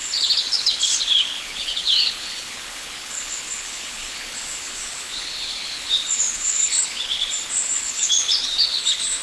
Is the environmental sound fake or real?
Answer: fake